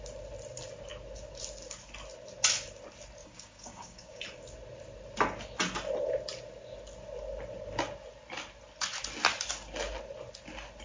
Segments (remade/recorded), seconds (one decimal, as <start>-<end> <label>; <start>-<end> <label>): 0.0-3.2 recorded; 3.2-4.2 remade; 4.2-10.8 recorded